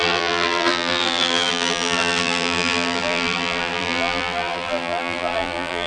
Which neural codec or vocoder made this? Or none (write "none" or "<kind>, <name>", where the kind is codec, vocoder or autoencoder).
vocoder, BigVGAN v2